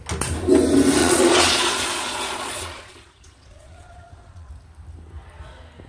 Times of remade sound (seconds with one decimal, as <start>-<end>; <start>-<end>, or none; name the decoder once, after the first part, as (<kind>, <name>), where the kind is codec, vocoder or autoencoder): 1.0-4.5 (vocoder, Vocos)